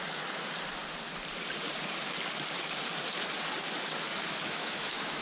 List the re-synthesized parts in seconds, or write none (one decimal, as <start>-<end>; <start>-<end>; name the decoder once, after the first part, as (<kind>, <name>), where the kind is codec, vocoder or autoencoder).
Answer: 4.1-5.2 (autoencoder, DAC-VAE)